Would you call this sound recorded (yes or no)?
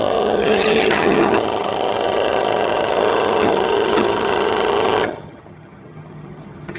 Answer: no